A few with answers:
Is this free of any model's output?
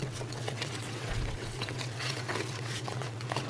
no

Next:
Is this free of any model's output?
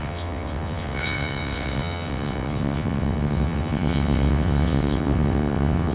no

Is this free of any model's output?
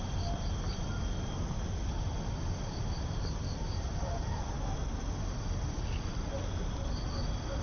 yes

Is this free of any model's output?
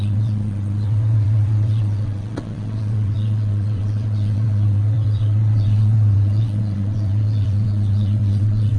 no